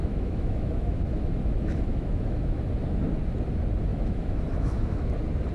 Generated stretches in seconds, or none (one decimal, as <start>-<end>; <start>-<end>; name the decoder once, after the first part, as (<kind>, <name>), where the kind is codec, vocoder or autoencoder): 0.0-2.6 (autoencoder, DAC-VAE); 3.9-5.1

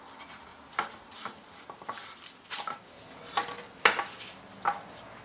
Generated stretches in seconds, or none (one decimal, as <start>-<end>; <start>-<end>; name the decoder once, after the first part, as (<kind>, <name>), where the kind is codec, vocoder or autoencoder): none

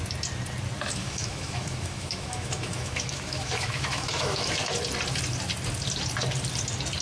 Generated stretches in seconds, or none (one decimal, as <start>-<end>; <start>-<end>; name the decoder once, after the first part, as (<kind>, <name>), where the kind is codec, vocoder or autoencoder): 1.0-4.7 (autoencoder, DAC-VAE)

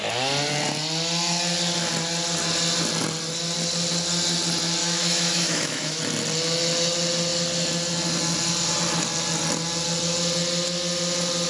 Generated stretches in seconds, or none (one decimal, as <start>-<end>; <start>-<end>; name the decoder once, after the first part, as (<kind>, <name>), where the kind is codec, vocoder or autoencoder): 4.8-6.0 (autoencoder, DAC-VAE)

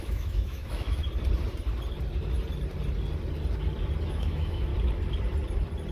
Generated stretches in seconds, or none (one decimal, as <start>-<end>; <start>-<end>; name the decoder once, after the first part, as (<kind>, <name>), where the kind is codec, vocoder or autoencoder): 0.0-1.0 (autoencoder, DAC-VAE); 4.1-4.7

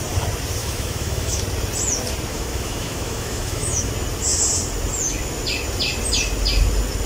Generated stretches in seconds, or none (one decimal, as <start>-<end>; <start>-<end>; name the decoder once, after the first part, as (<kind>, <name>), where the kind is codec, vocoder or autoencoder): 0.6-1.4 (autoencoder, DAC-VAE); 2.3-3.9

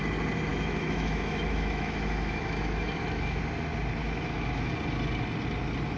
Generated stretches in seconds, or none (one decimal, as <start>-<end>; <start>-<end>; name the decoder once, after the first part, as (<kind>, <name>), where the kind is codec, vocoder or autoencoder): 0.5-3.4 (autoencoder, DAC-VAE); 4.0-4.7